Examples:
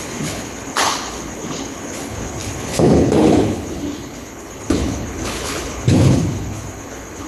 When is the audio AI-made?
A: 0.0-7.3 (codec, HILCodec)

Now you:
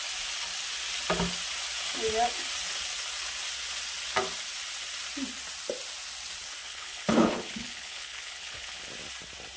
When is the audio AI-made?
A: 6.6-8.9 (codec, HILCodec)

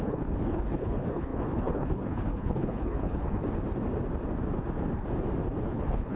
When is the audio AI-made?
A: 0.0-3.4 (codec, HILCodec); 5.6-6.2

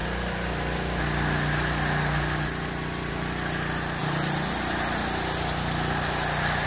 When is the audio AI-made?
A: none

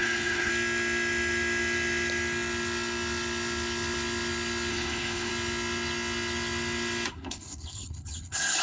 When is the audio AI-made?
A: 0.0-0.5 (codec, HILCodec); 4.7-5.3; 7.1-8.6

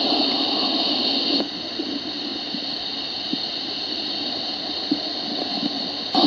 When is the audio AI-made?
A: none

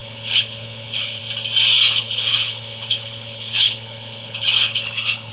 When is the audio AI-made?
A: 0.0-1.2 (codec, HILCodec); 2.0-5.3